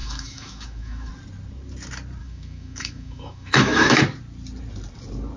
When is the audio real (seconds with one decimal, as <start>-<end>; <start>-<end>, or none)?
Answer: 1.1-2.2; 4.0-5.4